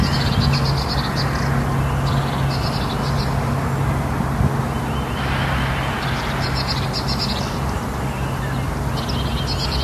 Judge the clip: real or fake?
real